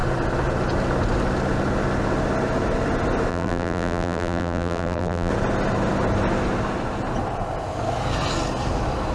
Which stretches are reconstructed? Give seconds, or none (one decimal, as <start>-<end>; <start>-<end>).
3.3-5.3